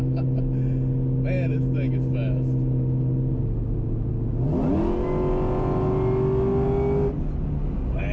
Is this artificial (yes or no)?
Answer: no